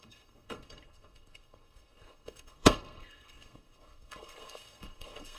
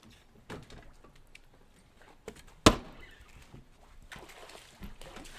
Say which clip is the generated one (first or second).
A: first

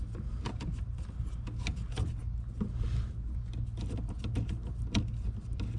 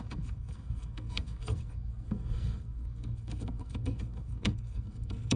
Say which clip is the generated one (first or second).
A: second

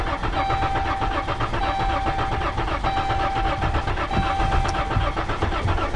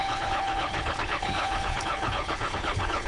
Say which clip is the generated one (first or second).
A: second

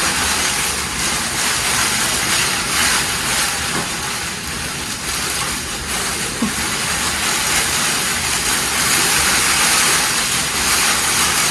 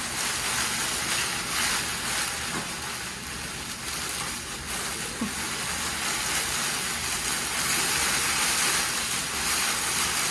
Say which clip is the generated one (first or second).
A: first